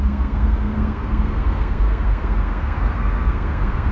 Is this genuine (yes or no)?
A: no